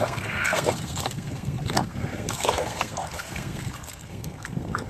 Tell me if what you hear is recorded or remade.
remade